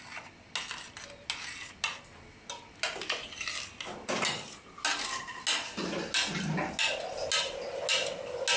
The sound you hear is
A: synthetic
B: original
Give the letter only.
B